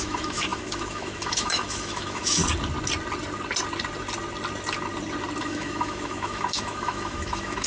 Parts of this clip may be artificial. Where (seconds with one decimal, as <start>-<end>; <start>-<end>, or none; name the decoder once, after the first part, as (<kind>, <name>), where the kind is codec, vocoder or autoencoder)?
0.0-2.4 (autoencoder, DAC-VAE); 5.4-7.7